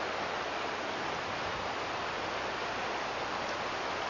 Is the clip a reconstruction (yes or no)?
no